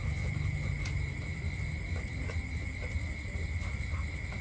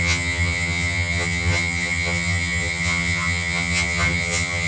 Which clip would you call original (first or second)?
first